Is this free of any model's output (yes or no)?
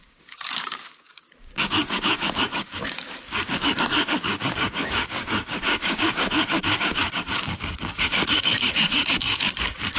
no